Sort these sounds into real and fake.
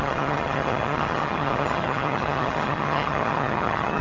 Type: fake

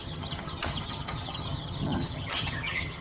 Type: fake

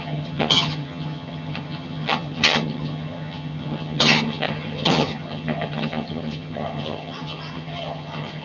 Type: fake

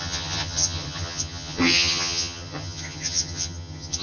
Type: fake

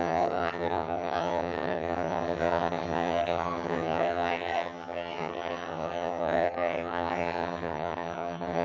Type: fake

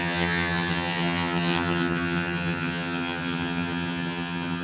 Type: fake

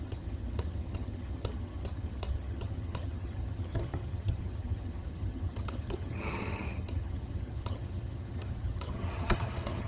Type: fake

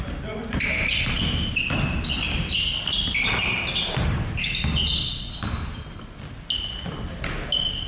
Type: real